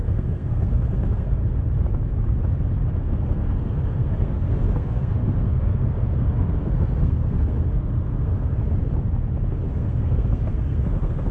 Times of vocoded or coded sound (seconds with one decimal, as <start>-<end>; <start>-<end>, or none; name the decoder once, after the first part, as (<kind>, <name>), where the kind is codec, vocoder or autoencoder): 0.0-1.4 (codec, SNAC); 3.0-8.6; 9.7-11.3